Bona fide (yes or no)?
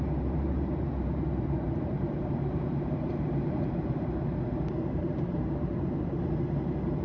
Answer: no